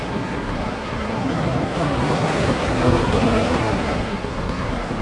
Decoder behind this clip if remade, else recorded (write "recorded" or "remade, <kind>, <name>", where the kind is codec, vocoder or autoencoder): remade, codec, SNAC